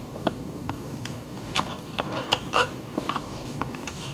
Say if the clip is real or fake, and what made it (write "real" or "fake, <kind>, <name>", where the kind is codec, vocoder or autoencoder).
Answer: fake, codec, DAC